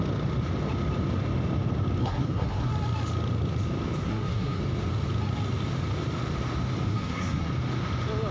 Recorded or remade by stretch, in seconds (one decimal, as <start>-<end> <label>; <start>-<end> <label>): 0.0-2.0 recorded; 2.0-2.7 remade; 2.7-4.0 recorded; 4.0-4.6 remade; 4.6-6.9 recorded; 6.9-7.5 remade; 7.5-8.3 recorded